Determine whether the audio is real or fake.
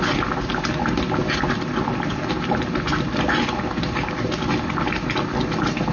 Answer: real